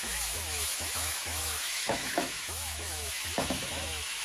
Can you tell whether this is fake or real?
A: fake